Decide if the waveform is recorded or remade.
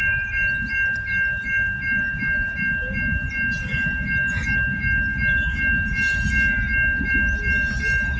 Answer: recorded